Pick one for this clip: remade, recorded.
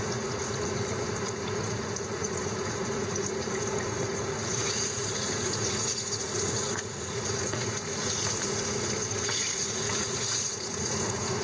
remade